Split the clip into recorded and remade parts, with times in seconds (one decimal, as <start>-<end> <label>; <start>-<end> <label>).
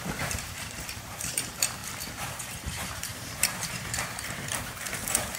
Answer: 0.0-1.8 remade; 1.8-2.3 recorded; 2.3-5.4 remade